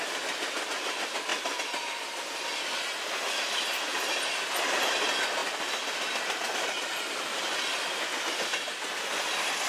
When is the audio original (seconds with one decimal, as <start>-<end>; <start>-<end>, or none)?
0.0-9.7